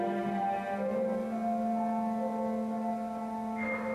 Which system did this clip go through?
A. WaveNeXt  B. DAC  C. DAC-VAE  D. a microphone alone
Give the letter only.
D